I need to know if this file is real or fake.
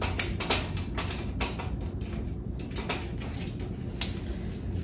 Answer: real